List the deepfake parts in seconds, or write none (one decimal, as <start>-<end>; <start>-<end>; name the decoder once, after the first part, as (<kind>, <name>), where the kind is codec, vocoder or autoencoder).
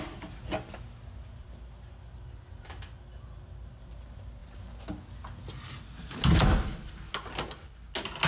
none